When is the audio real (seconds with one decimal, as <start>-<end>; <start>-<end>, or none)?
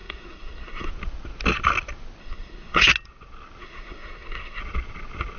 0.9-2.2; 2.9-3.6; 4.6-5.4